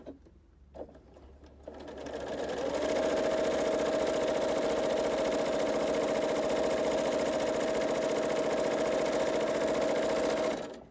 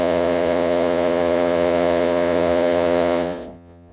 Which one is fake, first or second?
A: second